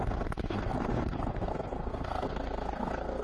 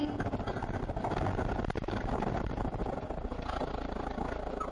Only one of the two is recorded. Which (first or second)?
second